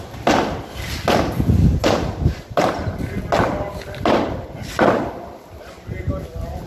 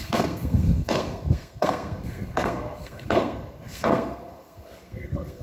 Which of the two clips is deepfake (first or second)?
second